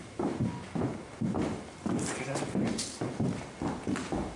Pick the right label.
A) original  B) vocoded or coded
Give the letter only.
A